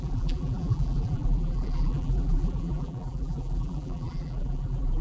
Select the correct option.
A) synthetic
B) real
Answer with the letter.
A